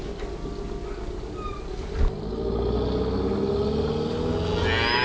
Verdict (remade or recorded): recorded